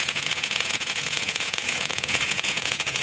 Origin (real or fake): fake